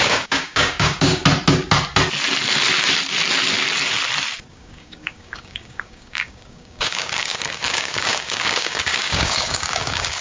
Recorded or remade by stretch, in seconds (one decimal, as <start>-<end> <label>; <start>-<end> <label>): 0.0-1.2 remade; 1.2-4.5 recorded; 4.5-10.2 remade